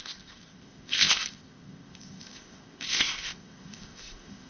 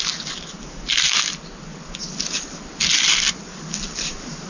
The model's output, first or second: first